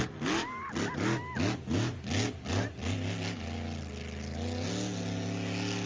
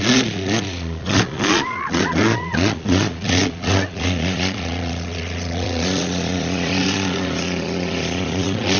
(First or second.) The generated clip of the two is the second